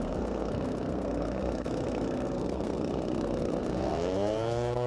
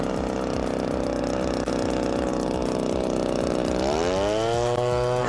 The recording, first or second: second